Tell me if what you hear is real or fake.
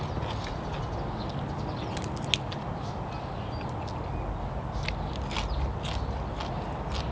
real